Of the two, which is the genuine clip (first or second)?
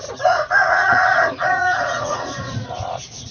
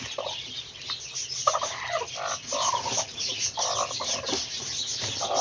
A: second